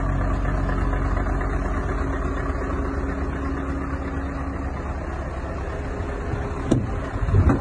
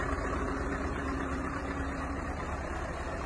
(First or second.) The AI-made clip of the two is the second